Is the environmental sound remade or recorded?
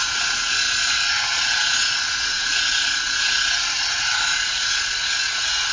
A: recorded